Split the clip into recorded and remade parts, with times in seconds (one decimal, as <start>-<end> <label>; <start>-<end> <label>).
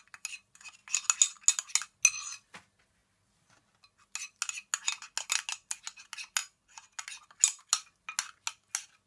0.0-9.1 recorded